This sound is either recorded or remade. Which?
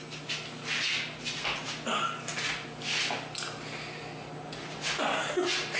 recorded